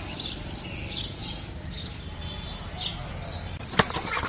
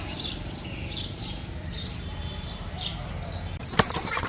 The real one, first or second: first